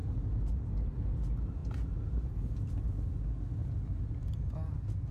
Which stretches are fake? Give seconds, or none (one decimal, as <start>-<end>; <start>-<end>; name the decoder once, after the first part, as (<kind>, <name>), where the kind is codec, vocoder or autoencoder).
1.6-2.5 (vocoder, BigVGAN v2)